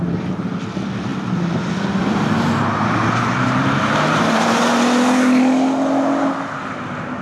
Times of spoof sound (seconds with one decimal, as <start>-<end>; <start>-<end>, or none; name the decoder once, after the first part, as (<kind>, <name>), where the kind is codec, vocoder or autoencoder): none